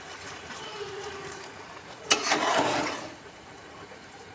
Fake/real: fake